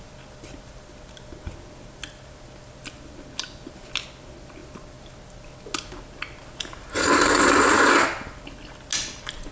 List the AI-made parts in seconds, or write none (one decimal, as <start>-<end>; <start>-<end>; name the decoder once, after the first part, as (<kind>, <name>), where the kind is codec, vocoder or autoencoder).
none